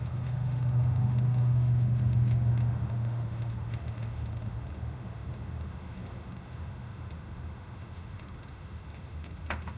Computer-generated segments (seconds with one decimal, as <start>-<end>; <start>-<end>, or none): 0.0-9.8

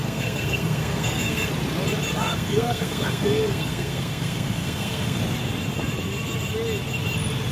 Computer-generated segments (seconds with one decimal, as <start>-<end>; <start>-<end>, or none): 0.0-1.5; 2.1-5.2

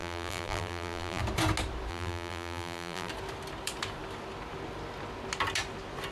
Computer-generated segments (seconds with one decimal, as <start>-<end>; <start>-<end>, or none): 0.0-1.2; 1.9-3.1

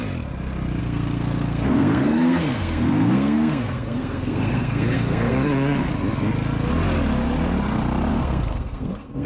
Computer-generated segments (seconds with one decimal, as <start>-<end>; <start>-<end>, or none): 0.8-5.9; 8.1-9.3

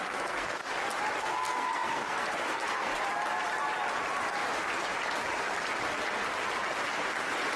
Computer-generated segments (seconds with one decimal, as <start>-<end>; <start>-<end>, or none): 0.0-0.6; 1.2-2.9

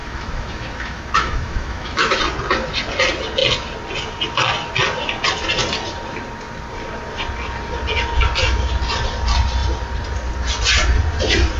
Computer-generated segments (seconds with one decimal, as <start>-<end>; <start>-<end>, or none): 0.0-2.2

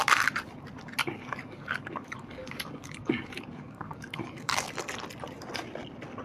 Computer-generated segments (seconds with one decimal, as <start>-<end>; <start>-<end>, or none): 1.0-4.7

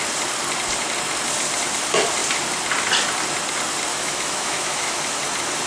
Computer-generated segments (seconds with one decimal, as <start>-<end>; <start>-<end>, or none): 3.9-5.2